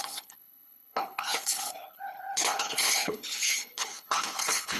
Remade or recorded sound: remade